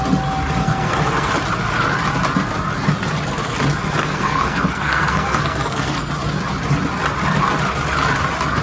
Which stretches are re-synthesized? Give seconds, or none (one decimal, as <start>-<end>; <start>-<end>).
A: 0.6-1.3; 4.0-6.1